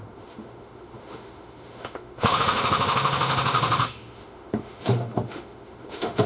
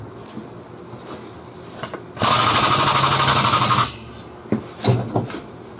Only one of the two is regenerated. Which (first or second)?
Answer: first